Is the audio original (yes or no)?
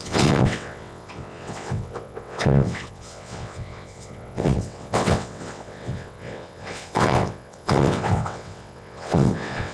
no